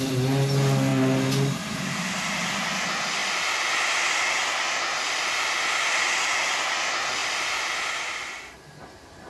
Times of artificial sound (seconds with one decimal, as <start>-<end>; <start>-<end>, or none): none